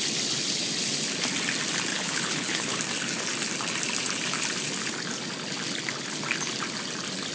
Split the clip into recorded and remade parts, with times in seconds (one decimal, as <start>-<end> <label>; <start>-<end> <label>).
0.0-1.9 recorded; 1.9-2.8 remade; 2.8-7.3 recorded